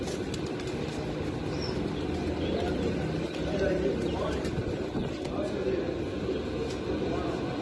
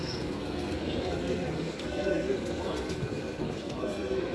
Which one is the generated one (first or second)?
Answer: second